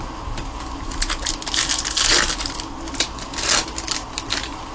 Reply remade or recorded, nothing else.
recorded